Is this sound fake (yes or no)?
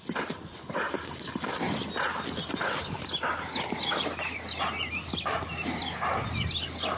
no